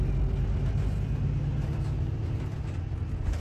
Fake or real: real